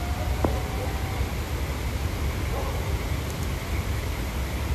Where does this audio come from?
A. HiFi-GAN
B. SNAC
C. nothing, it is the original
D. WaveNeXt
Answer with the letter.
C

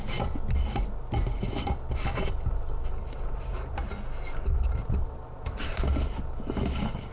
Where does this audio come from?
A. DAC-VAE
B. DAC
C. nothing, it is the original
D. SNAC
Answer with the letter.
C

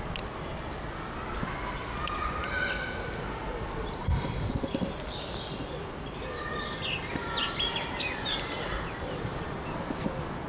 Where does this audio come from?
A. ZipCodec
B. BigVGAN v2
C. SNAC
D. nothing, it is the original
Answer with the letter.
D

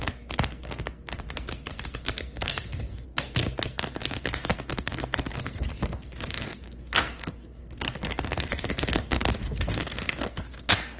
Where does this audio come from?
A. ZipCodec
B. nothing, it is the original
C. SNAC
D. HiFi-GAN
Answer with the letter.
C